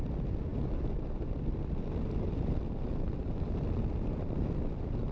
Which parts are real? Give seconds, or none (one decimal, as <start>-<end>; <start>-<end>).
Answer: 0.0-5.1